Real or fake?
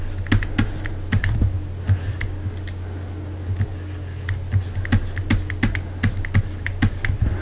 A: real